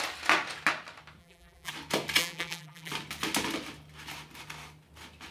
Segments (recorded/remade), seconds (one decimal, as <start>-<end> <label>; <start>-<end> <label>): 0.0-1.2 recorded; 1.2-1.7 remade; 1.7-2.2 recorded; 2.2-2.9 remade; 2.9-5.3 recorded

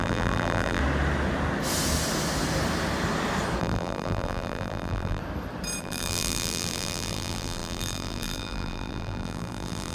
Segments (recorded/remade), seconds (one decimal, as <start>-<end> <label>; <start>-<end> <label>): 0.0-0.8 remade; 0.8-3.6 recorded; 3.6-5.2 remade; 5.2-5.8 recorded; 5.8-9.9 remade